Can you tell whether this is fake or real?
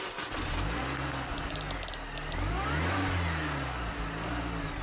real